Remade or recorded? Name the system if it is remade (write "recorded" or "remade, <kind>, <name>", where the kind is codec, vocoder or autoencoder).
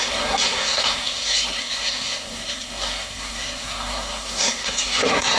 remade, codec, SNAC